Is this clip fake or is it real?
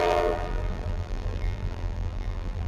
fake